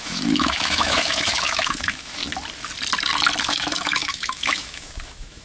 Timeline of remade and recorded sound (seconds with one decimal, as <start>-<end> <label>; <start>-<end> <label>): 0.0-2.2 remade; 2.2-3.4 recorded; 3.4-5.4 remade